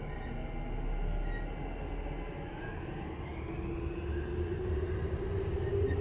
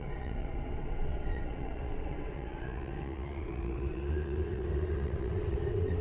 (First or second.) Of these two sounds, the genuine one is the first